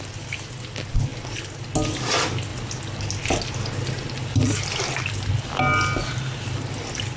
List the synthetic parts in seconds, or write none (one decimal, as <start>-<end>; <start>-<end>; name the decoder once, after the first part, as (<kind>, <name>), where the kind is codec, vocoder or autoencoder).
none